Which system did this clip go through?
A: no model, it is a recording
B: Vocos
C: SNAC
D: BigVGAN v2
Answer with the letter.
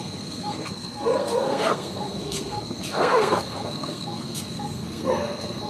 C